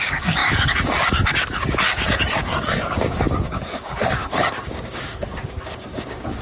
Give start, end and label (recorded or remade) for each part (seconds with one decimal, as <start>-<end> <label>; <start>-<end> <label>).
0.0-6.4 remade